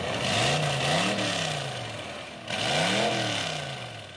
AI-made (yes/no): no